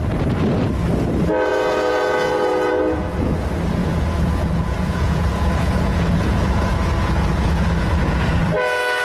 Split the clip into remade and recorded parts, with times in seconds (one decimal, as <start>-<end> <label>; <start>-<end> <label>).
0.0-1.5 recorded; 1.5-3.3 remade; 3.3-3.8 recorded; 3.8-8.4 remade; 8.4-9.0 recorded